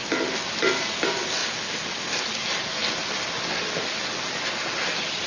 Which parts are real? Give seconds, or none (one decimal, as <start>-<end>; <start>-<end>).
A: 0.0-5.3